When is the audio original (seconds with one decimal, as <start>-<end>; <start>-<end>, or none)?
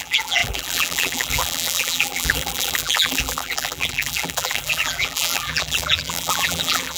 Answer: none